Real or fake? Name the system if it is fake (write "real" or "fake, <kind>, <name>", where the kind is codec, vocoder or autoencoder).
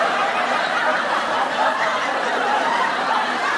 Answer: fake, vocoder, BigVGAN v2